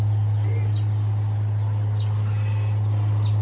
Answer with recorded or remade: recorded